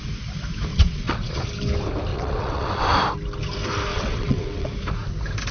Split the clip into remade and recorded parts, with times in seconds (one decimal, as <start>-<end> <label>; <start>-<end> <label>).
0.0-0.7 recorded; 0.7-1.4 remade; 1.4-2.1 recorded; 2.1-2.8 remade; 2.8-3.9 recorded; 3.9-4.7 remade; 4.7-5.5 recorded